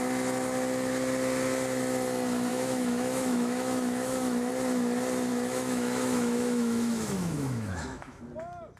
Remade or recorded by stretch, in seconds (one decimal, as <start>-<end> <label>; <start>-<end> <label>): 0.0-2.5 recorded; 2.5-4.5 remade; 4.5-5.3 recorded; 5.3-8.2 remade; 8.2-8.8 recorded